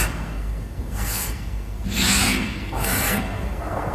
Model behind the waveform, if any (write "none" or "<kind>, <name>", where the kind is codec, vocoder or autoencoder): codec, SNAC